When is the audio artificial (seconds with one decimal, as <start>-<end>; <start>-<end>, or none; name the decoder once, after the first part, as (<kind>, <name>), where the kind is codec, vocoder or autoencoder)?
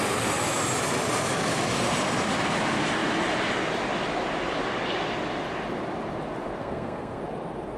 6.6-7.2 (codec, SNAC)